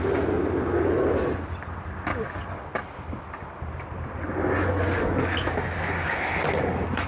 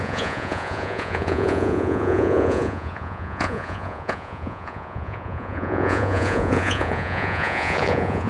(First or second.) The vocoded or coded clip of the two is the second